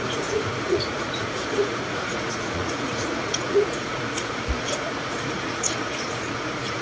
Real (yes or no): no